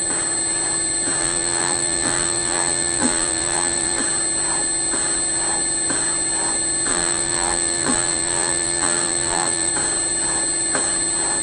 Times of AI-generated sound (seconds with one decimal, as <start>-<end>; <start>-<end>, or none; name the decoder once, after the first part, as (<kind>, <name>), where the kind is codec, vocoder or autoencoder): 1.2-4.0 (vocoder, BigVGAN v2); 6.9-9.7